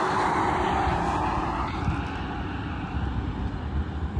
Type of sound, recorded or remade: recorded